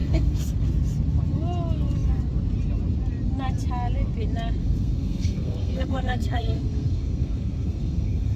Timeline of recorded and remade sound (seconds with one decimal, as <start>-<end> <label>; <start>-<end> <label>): 0.0-0.7 remade; 0.7-4.6 recorded; 4.6-8.4 remade